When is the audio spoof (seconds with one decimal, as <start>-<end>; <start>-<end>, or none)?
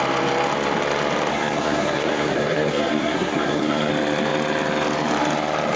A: 1.3-3.9